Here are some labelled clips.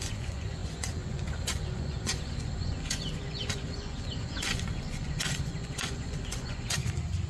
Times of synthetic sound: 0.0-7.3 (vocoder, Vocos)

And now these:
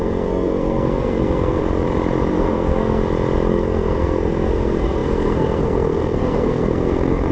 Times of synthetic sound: 0.0-1.6 (codec, SNAC); 2.3-3.0; 3.5-7.3

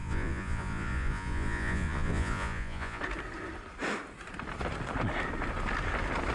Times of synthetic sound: 0.0-3.0 (vocoder, Vocos)

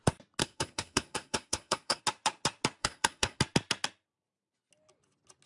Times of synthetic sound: 0.4-2.0 (codec, SNAC); 2.8-3.4

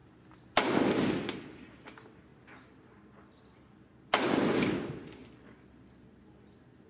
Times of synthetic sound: none